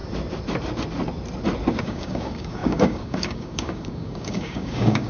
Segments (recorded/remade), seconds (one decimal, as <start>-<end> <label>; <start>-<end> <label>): 0.0-1.8 recorded; 1.8-5.1 remade